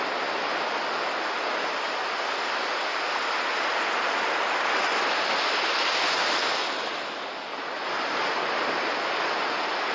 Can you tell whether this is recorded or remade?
recorded